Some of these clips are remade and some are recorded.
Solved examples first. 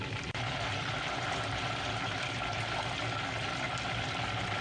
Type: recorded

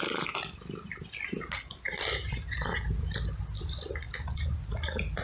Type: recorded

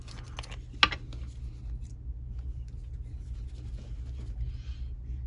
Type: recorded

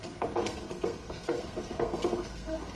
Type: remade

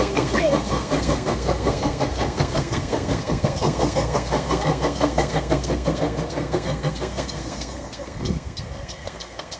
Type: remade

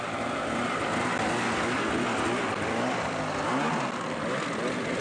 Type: recorded